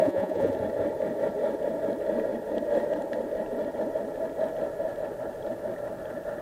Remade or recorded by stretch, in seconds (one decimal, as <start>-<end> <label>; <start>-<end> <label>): 0.0-0.5 remade; 0.5-6.4 recorded